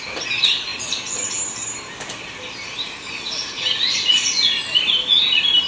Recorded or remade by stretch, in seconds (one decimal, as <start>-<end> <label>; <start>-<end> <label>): 0.0-5.7 recorded